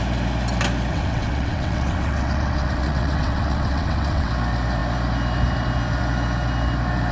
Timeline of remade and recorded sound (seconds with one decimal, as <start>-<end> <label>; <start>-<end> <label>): 0.0-0.9 recorded; 0.9-4.3 remade; 4.3-7.1 recorded